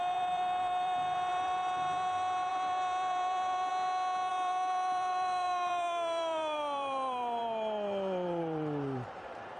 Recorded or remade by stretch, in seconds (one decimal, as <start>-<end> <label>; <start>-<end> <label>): 0.0-3.7 remade; 3.7-4.3 recorded; 4.3-9.6 remade